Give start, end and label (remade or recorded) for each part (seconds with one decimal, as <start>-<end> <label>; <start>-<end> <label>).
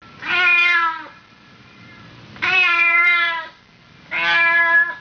0.0-0.6 recorded; 0.6-3.6 remade; 3.6-5.0 recorded